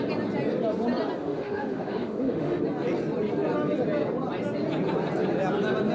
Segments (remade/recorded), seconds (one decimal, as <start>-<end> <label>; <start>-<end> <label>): 0.0-1.2 recorded; 1.2-2.6 remade; 2.6-5.9 recorded